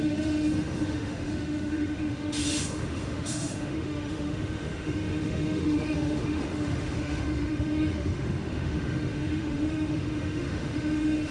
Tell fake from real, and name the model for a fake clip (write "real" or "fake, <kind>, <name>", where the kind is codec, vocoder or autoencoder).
fake, autoencoder, DAC-VAE